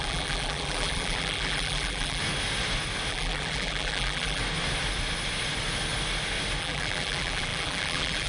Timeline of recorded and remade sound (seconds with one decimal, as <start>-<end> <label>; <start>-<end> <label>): 0.0-2.2 remade; 2.2-3.1 recorded; 3.1-4.4 remade; 4.4-6.6 recorded; 6.6-8.3 remade